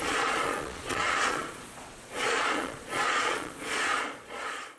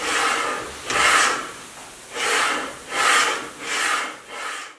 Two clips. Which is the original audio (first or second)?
second